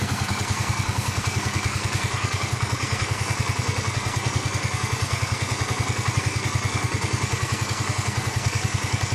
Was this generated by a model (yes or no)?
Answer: yes